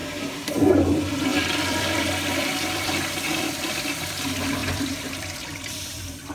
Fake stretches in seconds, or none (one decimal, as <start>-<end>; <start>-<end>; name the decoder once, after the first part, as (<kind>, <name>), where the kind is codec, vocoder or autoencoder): 0.0-6.3 (vocoder, BigVGAN v2)